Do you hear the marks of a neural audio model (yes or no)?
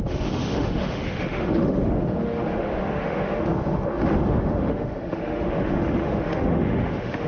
yes